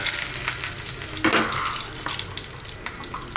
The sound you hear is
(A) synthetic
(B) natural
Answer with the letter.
B